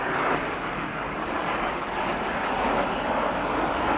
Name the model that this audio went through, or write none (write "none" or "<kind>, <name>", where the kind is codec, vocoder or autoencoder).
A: codec, DAC